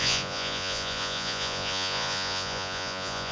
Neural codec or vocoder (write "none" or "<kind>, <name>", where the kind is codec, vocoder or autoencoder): vocoder, Vocos